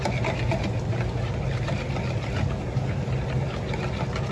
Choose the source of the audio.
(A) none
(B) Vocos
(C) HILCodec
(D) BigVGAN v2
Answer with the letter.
A